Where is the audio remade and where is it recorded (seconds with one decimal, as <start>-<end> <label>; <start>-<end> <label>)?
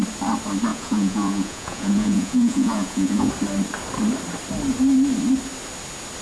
0.0-0.7 recorded; 0.7-3.3 remade; 3.3-6.2 recorded